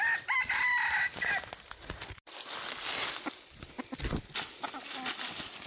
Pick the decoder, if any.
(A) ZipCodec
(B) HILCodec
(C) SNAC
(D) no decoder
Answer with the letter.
D